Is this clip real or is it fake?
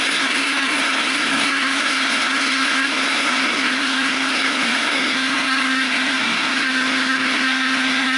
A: fake